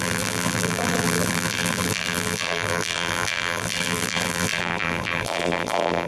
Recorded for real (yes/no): no